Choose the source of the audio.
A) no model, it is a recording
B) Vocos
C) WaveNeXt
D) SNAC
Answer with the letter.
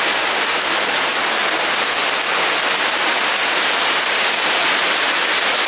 A